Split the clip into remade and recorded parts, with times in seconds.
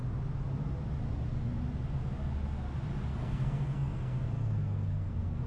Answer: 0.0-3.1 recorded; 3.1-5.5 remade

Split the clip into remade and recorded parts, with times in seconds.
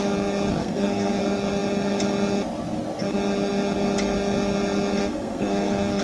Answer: 0.0-0.6 recorded; 0.6-1.2 remade; 1.2-5.0 recorded; 5.0-6.0 remade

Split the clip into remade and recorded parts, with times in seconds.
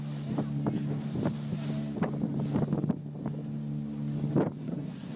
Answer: 0.0-4.6 recorded; 4.6-5.2 remade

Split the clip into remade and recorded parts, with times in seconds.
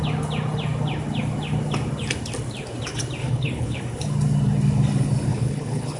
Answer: 0.0-3.2 recorded; 3.2-3.8 remade; 3.8-5.3 recorded; 5.3-6.0 remade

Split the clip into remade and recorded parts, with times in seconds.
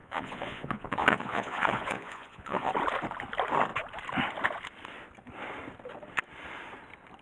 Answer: 0.0-2.7 remade; 2.7-7.2 recorded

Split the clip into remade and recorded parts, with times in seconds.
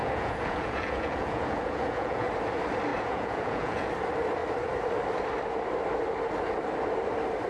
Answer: 0.0-2.3 remade; 2.3-2.9 recorded; 2.9-3.9 remade; 3.9-7.5 recorded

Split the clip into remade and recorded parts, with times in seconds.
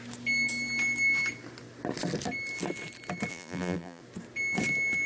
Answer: 0.0-3.3 recorded; 3.3-4.0 remade; 4.0-5.1 recorded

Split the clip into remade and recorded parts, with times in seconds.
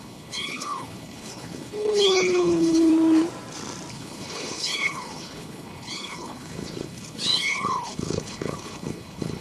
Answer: 0.0-2.9 remade; 2.9-3.9 recorded; 3.9-9.4 remade